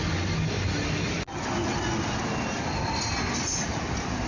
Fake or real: real